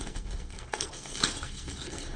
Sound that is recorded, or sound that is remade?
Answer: remade